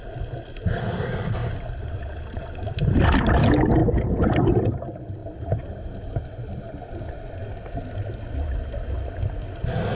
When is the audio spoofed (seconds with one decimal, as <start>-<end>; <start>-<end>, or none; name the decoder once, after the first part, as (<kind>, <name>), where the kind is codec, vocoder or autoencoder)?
1.4-3.2 (vocoder, BigVGAN v2)